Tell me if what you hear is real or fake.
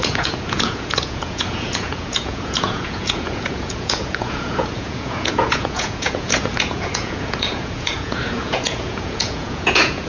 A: fake